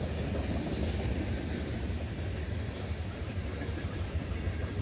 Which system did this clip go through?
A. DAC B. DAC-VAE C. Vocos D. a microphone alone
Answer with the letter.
D